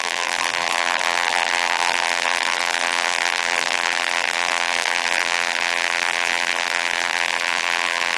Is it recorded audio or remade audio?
remade